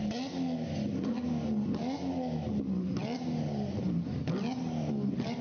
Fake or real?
real